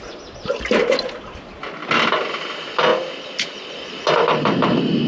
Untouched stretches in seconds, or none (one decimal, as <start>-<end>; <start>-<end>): 0.0-5.1